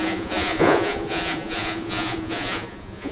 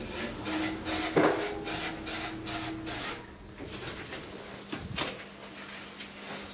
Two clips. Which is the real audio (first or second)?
second